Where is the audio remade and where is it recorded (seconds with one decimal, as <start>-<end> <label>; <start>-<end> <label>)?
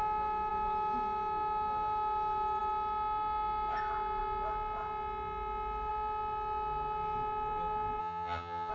0.0-8.0 recorded; 8.0-8.7 remade